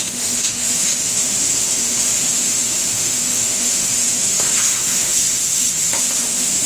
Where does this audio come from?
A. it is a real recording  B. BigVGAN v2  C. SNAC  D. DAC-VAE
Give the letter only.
D